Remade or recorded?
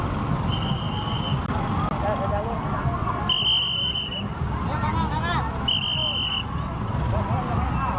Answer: recorded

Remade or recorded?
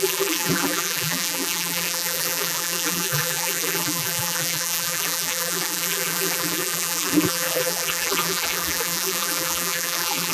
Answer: remade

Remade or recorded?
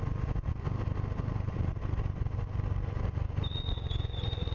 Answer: recorded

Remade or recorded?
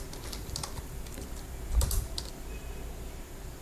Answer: remade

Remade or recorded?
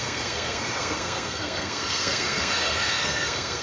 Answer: remade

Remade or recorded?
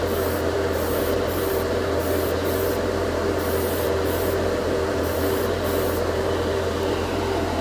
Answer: remade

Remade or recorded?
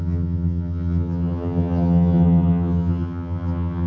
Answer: remade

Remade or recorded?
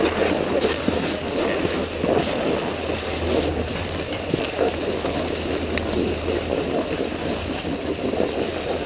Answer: recorded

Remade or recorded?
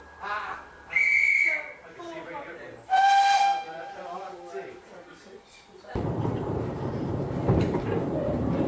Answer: remade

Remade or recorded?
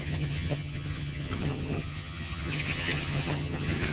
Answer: remade